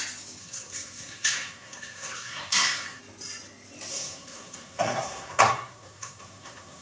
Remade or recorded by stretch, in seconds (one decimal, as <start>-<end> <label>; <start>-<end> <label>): 0.0-0.4 recorded; 0.4-3.0 remade; 3.0-3.9 recorded; 3.9-6.8 remade